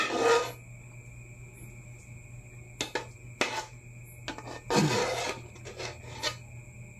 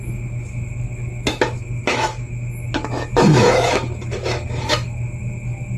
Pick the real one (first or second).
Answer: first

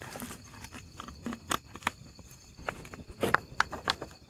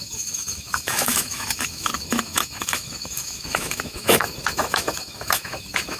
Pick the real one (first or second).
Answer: first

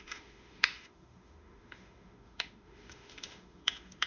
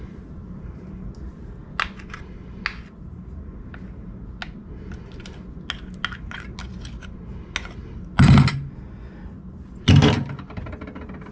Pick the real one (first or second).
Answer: second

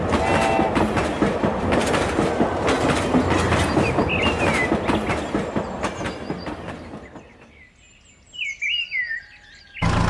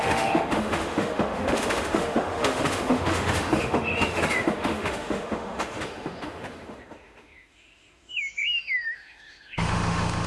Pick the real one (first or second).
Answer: first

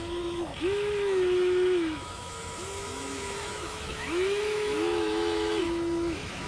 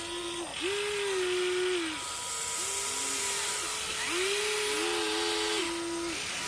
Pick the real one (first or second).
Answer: second